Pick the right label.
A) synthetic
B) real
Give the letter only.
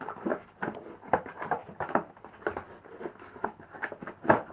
B